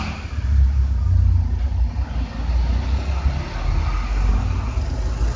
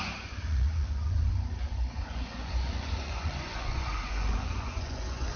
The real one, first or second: first